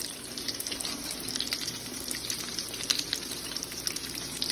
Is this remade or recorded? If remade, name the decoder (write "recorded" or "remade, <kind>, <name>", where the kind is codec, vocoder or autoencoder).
remade, vocoder, BigVGAN v2